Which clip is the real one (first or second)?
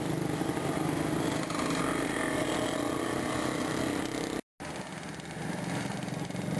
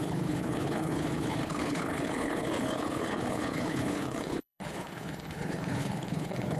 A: first